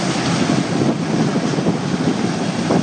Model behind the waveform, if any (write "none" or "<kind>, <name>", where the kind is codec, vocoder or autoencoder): none